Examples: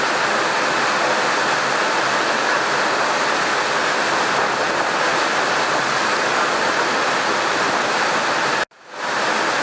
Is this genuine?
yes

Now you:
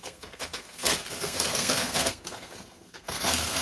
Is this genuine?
no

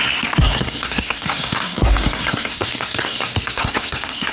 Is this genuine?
no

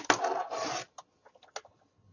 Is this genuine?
yes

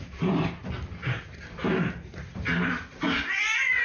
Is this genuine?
yes